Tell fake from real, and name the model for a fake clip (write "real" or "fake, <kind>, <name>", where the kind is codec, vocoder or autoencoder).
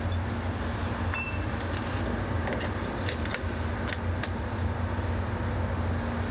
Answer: fake, vocoder, BigVGAN v2